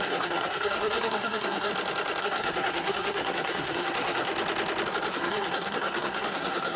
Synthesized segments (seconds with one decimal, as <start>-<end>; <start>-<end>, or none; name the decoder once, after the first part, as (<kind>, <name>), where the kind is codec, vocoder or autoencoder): 0.0-1.7 (codec, SNAC); 2.2-4.3; 5.1-6.8